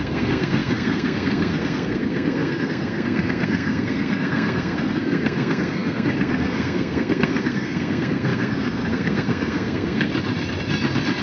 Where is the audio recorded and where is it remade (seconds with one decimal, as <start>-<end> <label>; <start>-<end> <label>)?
0.0-10.1 remade; 10.1-11.2 recorded